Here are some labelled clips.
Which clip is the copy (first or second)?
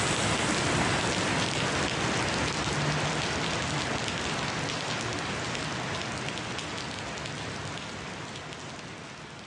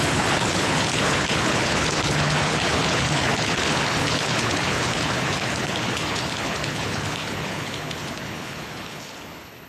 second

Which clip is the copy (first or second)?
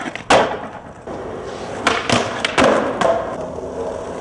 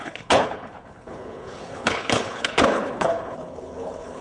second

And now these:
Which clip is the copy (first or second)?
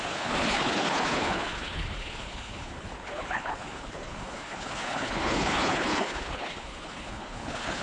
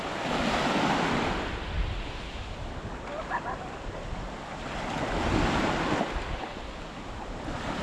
first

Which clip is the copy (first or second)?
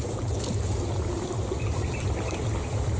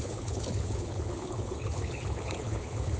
second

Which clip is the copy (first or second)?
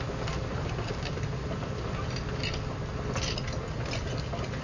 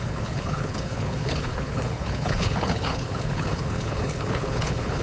second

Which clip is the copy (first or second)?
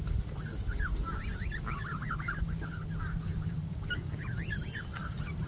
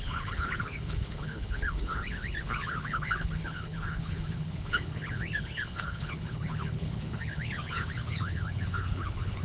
second